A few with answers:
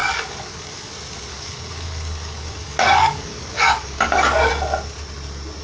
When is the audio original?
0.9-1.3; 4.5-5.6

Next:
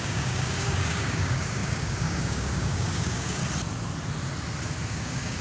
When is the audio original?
3.4-4.9

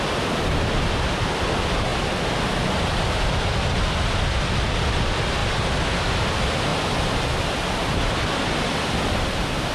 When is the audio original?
1.9-2.6; 6.7-7.3